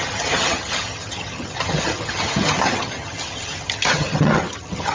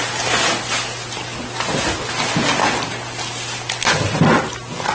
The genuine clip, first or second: second